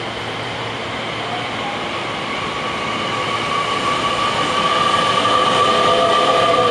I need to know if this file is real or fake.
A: fake